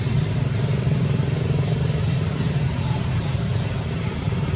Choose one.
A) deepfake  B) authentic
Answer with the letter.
A